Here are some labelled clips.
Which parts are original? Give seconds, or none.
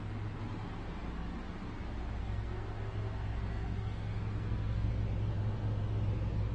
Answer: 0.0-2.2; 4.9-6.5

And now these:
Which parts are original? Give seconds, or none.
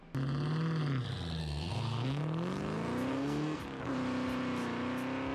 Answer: 0.0-1.4; 2.2-3.1; 3.6-5.3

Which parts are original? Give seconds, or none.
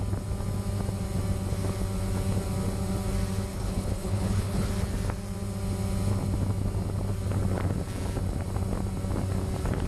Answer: 0.0-3.5; 4.7-9.9